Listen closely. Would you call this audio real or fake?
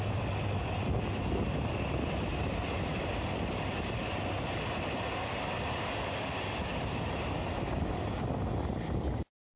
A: real